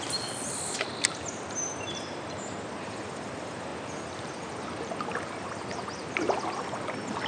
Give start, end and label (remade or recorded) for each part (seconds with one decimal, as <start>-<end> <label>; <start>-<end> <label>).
0.0-7.3 recorded